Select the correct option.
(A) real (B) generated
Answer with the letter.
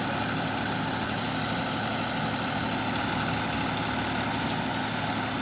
A